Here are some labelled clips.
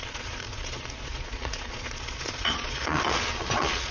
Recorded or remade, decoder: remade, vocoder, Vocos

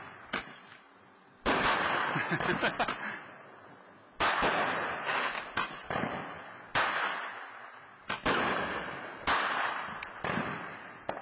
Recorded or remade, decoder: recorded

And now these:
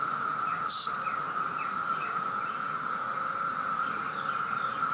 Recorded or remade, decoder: remade, vocoder, Vocos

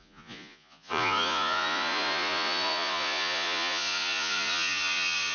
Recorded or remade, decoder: remade, vocoder, Vocos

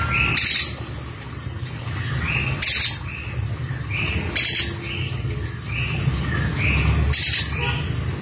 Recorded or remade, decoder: recorded